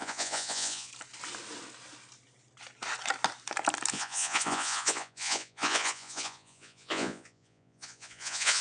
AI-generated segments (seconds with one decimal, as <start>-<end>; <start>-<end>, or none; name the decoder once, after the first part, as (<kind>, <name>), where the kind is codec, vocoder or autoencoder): 0.0-0.9 (vocoder, Vocos); 3.9-8.6